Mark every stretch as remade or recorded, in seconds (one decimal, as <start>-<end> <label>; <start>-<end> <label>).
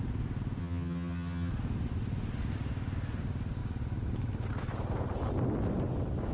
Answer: 0.0-0.6 recorded; 0.6-1.5 remade; 1.5-6.3 recorded